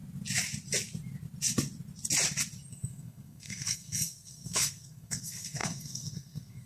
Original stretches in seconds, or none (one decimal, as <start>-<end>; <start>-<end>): 0.0-2.7